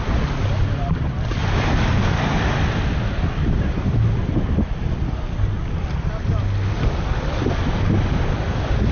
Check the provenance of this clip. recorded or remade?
recorded